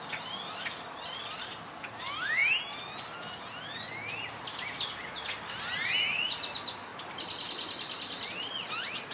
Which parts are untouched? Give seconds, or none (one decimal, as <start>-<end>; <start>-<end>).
0.0-9.1